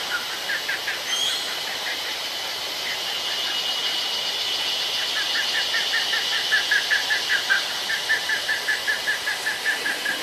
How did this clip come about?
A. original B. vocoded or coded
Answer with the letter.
A